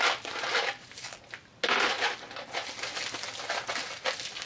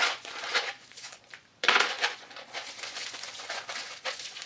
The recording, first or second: first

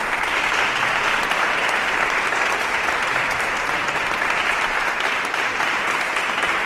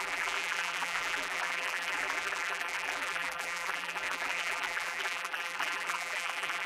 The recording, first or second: first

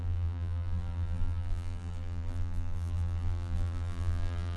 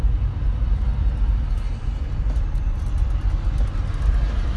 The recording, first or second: second